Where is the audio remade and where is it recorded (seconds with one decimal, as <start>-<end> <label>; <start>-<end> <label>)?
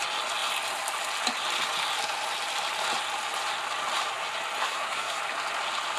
0.0-4.6 recorded; 4.6-5.2 remade; 5.2-6.0 recorded